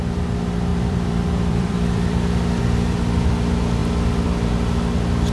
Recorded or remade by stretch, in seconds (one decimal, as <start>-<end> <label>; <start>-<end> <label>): 0.0-0.7 recorded; 0.7-2.6 remade; 2.6-3.8 recorded; 3.8-4.5 remade; 4.5-5.3 recorded